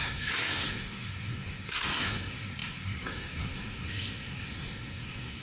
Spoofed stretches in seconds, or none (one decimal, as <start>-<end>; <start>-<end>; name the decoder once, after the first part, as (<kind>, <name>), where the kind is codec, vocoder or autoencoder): 0.0-5.4 (codec, SNAC)